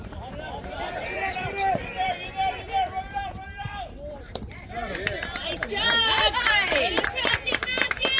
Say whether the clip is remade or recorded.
remade